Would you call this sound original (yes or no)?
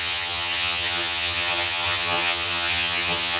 no